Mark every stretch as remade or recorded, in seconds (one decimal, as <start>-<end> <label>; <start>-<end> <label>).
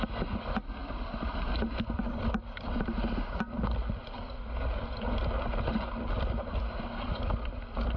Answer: 0.0-8.0 recorded